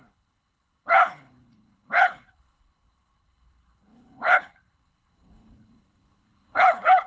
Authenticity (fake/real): fake